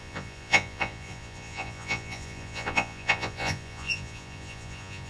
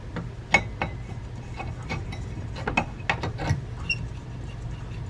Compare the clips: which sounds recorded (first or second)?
second